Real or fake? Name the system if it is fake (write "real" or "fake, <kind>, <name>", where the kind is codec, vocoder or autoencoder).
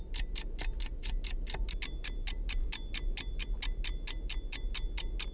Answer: real